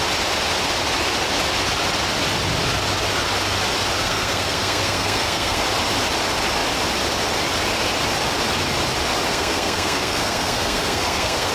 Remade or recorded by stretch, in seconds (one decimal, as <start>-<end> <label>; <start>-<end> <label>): 0.0-4.0 recorded; 4.0-5.6 remade; 5.6-9.3 recorded; 9.3-11.5 remade